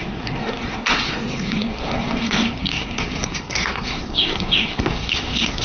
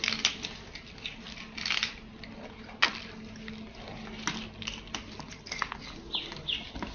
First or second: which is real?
second